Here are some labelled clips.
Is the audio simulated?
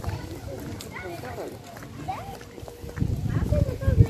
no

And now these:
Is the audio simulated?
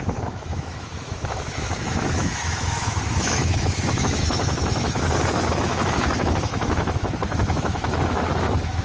yes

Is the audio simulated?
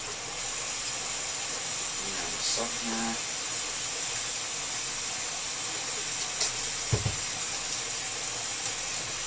no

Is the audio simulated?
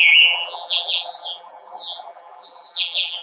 yes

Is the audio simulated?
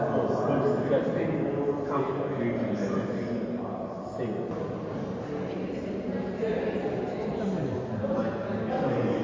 no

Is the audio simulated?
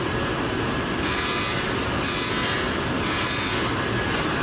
no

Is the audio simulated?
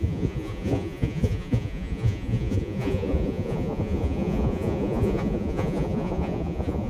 yes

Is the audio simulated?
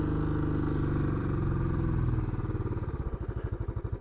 no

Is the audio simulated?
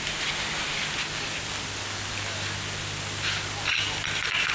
no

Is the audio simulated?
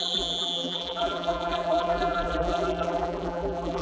yes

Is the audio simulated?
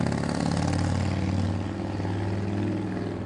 no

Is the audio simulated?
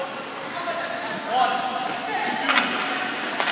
no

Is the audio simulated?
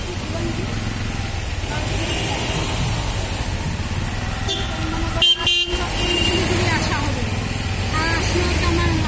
no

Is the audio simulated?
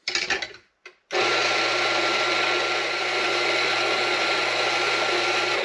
no